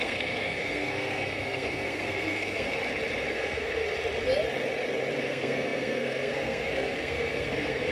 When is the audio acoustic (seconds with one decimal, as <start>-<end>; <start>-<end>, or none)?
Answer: 2.8-3.3; 3.8-5.2